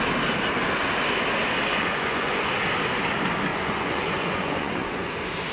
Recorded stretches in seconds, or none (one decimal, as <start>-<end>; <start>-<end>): 0.0-1.7; 2.5-3.5; 5.1-5.5